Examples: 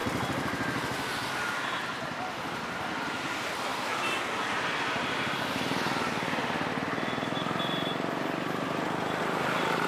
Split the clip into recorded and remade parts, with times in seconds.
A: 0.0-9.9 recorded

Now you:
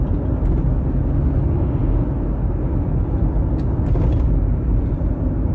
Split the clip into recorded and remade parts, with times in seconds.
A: 0.0-5.5 recorded